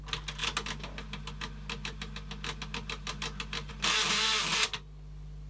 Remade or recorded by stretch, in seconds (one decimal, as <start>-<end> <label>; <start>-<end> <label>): 0.0-5.5 recorded

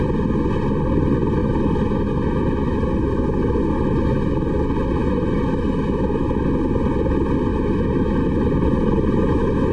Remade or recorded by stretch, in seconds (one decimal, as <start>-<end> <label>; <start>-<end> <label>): 0.0-1.4 recorded; 1.4-4.5 remade; 4.5-5.0 recorded; 5.0-6.4 remade; 6.4-7.5 recorded; 7.5-9.7 remade

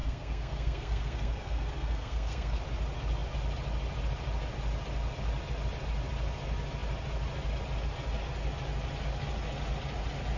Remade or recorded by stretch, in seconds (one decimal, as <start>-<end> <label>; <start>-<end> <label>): 0.0-2.6 remade; 2.6-10.4 recorded

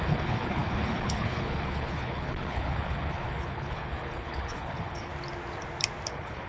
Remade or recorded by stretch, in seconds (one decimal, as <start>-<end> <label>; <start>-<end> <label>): 0.0-5.1 remade; 5.1-6.1 recorded; 6.1-6.5 remade

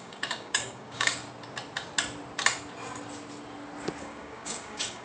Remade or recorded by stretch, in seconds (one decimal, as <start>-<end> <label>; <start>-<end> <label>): 0.0-1.2 remade; 1.2-4.0 recorded; 4.0-5.0 remade